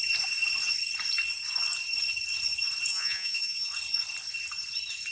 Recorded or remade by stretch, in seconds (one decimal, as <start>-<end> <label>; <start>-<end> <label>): 0.0-2.9 recorded; 2.9-3.7 remade; 3.7-5.1 recorded

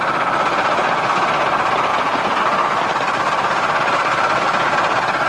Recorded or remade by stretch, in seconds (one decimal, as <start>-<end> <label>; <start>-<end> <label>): 0.0-0.8 recorded; 0.8-1.3 remade; 1.3-1.9 recorded; 1.9-2.4 remade; 2.4-5.3 recorded